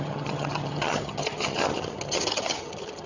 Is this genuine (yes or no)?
no